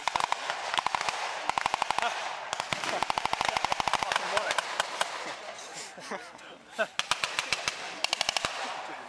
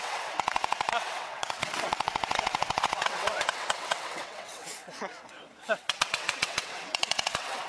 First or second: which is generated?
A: second